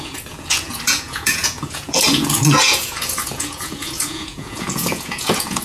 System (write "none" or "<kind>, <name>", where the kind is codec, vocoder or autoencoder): vocoder, Vocos